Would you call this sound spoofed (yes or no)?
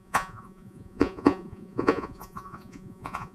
yes